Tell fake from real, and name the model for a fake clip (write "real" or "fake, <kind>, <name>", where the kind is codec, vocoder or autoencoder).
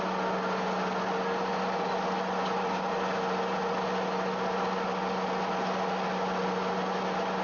real